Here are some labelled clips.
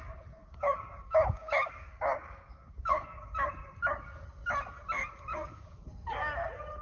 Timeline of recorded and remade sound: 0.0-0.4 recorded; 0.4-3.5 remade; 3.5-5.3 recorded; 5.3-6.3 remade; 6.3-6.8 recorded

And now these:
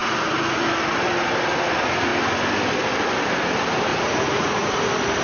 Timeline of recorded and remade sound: 0.0-0.6 remade; 0.6-3.9 recorded; 3.9-4.7 remade; 4.7-5.2 recorded

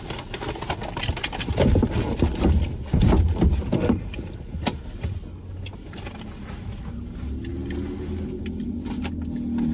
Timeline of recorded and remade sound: 0.0-9.7 recorded

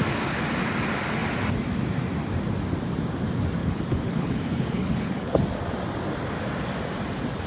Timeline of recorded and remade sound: 0.0-3.6 recorded; 3.6-5.4 remade; 5.4-7.5 recorded

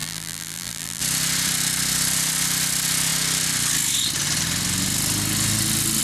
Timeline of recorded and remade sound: 0.0-1.0 remade; 1.0-6.0 recorded

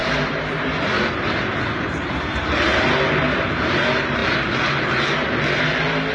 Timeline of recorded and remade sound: 0.0-6.1 recorded

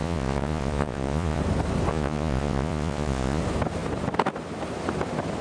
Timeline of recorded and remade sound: 0.0-1.4 remade; 1.4-1.9 recorded; 1.9-3.4 remade; 3.4-5.4 recorded